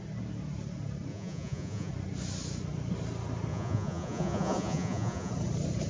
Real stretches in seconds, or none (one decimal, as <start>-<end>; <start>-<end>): 0.0-1.1; 1.9-3.5; 5.3-5.9